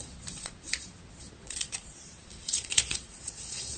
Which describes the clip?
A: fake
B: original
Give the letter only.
A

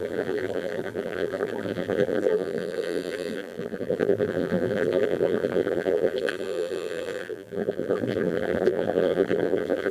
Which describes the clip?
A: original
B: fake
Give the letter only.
B